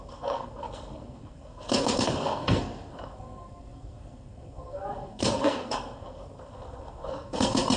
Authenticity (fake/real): fake